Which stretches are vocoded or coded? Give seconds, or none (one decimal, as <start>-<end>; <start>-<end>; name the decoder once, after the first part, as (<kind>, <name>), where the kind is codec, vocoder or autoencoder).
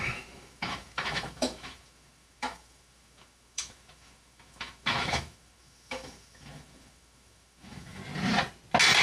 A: 0.0-8.0 (autoencoder, DAC-VAE)